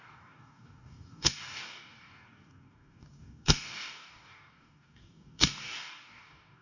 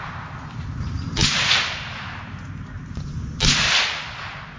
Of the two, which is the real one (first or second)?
second